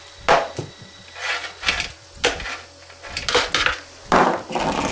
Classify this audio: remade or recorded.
recorded